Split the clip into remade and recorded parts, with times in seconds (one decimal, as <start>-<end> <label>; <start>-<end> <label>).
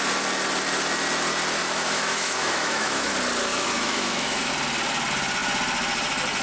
0.0-1.6 recorded; 1.6-3.1 remade; 3.1-3.5 recorded; 3.5-4.5 remade; 4.5-6.4 recorded